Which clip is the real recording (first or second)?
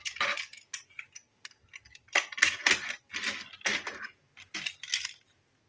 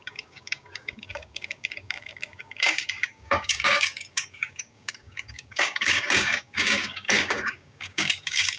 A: first